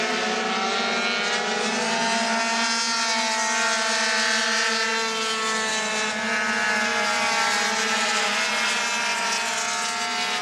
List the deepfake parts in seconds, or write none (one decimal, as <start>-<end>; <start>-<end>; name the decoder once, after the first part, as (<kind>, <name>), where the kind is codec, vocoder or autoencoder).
none